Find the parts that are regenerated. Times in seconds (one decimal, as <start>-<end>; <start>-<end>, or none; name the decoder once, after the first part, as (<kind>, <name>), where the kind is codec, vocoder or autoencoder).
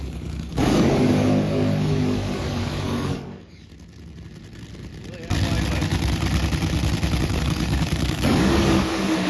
0.0-3.7 (codec, DAC); 7.4-9.3